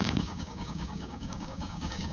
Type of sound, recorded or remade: remade